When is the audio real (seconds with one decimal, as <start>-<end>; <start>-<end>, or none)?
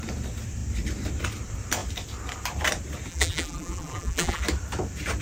0.0-3.1; 4.4-5.2